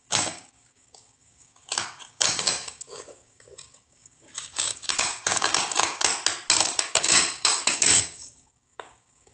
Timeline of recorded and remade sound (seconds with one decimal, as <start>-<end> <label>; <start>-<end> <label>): 0.0-6.1 remade; 6.1-6.6 recorded; 6.6-9.3 remade